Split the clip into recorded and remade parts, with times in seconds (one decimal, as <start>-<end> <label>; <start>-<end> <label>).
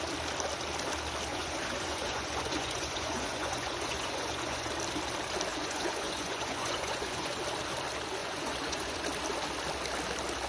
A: 0.0-1.3 recorded; 1.3-4.7 remade; 4.7-5.5 recorded; 5.5-7.4 remade; 7.4-8.2 recorded; 8.2-9.0 remade; 9.0-10.5 recorded